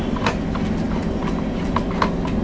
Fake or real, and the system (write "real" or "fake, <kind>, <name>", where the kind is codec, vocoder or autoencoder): real